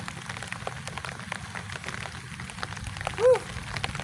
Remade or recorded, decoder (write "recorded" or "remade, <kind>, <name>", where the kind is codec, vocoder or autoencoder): recorded